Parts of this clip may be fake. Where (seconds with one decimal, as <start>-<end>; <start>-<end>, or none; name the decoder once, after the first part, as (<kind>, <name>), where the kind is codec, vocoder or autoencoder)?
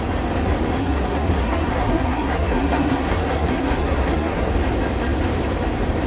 0.8-4.5 (codec, SNAC)